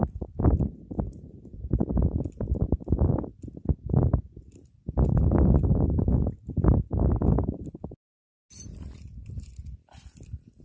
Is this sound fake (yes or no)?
no